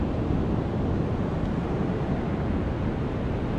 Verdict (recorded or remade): recorded